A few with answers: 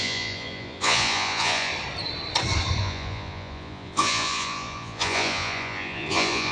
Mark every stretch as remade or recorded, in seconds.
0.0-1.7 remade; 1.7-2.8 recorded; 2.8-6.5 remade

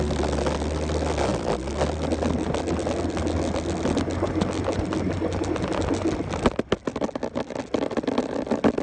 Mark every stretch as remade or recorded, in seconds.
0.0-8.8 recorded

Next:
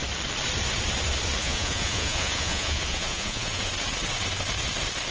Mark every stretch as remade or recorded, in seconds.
0.0-1.4 recorded; 1.4-3.7 remade; 3.7-5.1 recorded